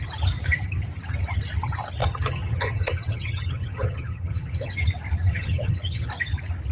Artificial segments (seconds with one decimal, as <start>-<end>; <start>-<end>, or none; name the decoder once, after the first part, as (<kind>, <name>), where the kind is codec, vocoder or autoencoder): 2.0-4.7 (vocoder, HiFi-GAN); 5.3-6.1